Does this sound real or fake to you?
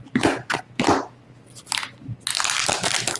real